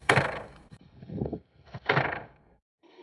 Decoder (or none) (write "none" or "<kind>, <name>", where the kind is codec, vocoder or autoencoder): codec, SNAC